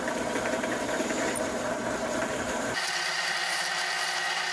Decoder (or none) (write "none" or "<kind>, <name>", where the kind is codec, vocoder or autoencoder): vocoder, BigVGAN v2